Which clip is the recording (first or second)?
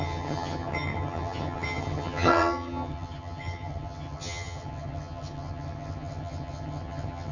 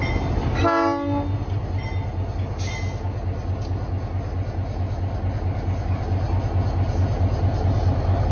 second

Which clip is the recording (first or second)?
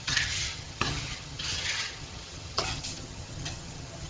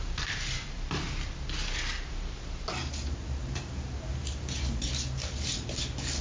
second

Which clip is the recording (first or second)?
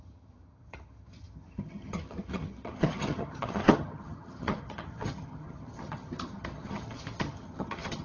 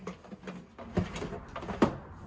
second